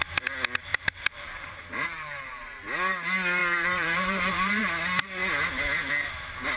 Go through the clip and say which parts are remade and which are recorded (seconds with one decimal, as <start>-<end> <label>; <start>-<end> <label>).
0.0-0.7 recorded; 0.7-2.6 remade; 2.6-3.4 recorded; 3.4-4.6 remade; 4.6-6.6 recorded